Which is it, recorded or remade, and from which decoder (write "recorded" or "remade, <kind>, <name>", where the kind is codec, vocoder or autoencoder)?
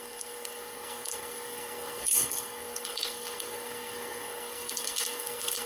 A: remade, codec, SNAC